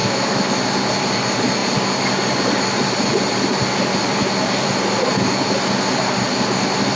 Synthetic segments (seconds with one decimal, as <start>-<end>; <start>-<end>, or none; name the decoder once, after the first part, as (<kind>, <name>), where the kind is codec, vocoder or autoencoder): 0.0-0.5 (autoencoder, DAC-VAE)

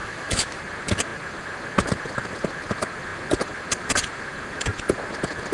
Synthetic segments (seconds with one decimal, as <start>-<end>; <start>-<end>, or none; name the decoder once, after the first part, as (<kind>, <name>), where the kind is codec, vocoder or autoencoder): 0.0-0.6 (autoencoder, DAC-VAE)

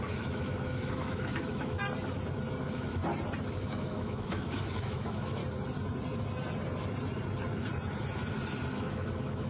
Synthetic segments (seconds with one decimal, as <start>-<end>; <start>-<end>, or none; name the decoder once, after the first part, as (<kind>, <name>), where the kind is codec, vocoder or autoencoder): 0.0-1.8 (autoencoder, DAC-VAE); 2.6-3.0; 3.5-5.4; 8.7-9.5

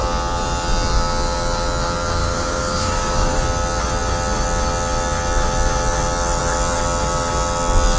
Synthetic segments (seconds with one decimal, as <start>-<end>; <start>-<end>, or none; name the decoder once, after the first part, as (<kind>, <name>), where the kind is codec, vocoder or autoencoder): 2.2-3.4 (autoencoder, DAC-VAE)